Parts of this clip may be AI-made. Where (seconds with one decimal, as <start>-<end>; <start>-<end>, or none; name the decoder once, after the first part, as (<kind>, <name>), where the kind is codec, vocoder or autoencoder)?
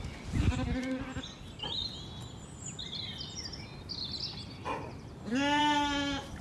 none